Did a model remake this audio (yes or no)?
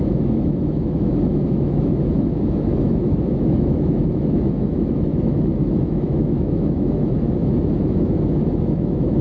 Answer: yes